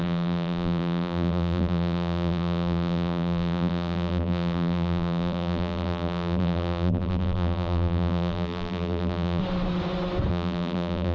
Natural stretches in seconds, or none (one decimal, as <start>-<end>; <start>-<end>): 9.4-10.3